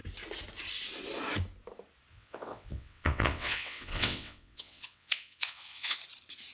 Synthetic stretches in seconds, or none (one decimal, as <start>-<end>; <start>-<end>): 2.1-6.0

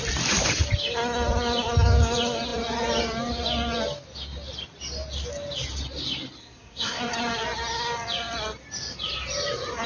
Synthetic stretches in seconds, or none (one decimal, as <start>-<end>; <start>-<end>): 6.4-7.0

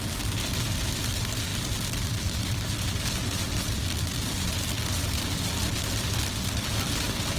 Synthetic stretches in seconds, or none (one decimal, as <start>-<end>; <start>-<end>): none

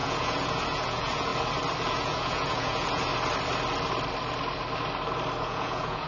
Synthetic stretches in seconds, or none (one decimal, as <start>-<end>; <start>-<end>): 0.0-1.3; 1.9-3.1; 5.4-6.1

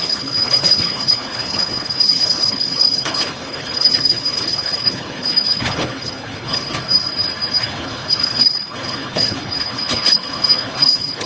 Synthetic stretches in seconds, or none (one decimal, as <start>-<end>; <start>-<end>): 0.0-6.6; 7.6-11.3

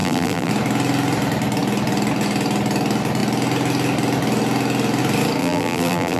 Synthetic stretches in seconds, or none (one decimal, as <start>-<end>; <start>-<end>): 0.0-0.5; 5.4-6.2